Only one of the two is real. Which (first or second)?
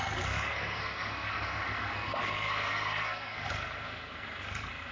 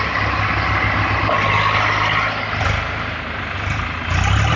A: second